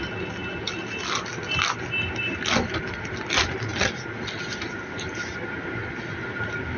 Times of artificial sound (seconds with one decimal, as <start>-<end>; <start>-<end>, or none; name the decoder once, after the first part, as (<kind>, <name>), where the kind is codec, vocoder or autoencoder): none